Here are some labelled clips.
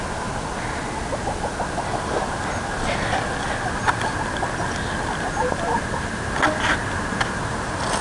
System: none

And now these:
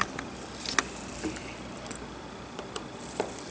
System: none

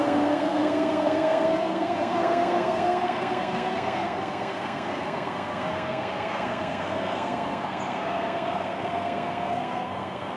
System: codec, SNAC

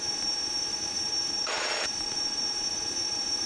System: vocoder, Vocos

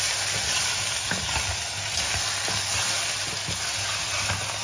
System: none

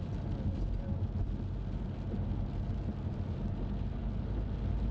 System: none